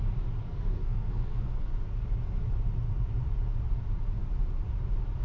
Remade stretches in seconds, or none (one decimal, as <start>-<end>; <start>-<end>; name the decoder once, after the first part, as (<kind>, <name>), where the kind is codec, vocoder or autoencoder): 0.4-1.7 (codec, SNAC)

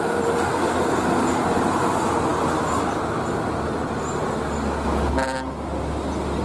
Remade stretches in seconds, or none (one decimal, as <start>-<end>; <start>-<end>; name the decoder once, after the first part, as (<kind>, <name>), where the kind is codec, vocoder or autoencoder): 0.5-1.0 (codec, SNAC)

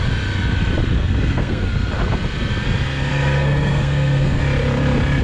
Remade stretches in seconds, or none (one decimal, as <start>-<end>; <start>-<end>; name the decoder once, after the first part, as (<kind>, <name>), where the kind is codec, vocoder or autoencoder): 1.0-1.7 (codec, SNAC); 3.1-4.4

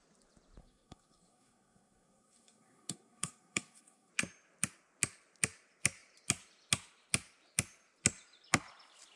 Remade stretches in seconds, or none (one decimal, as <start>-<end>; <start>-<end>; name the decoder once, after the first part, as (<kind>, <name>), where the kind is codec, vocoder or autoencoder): 0.6-4.1 (codec, SNAC)